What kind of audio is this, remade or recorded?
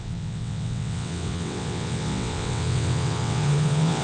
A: remade